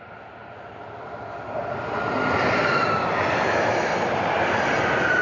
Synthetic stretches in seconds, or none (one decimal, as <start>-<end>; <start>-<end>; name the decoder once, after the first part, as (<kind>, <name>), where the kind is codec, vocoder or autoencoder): none